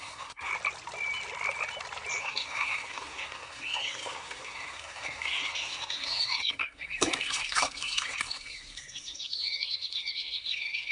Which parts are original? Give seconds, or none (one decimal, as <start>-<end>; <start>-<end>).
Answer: 0.5-2.2